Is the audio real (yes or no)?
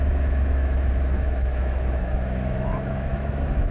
no